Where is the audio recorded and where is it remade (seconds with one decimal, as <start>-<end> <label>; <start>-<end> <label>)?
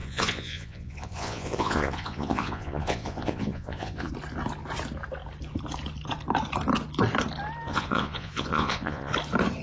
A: 0.0-4.1 remade; 4.1-7.7 recorded; 7.7-9.1 remade; 9.1-9.6 recorded